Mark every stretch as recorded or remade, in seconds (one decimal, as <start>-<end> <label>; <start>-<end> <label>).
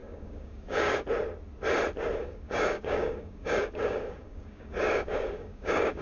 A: 0.0-1.0 remade; 1.0-2.2 recorded; 2.2-6.0 remade